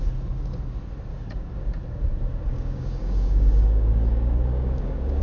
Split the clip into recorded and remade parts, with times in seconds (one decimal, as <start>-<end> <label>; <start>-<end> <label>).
0.0-1.1 recorded; 1.1-1.7 remade; 1.7-2.5 recorded; 2.5-5.2 remade